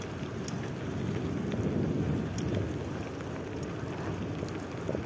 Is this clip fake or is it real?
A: real